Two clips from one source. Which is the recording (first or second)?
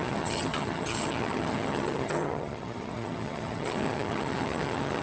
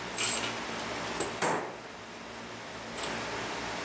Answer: second